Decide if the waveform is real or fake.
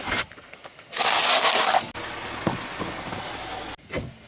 real